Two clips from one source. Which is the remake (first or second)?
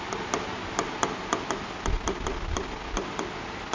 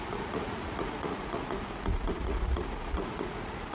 second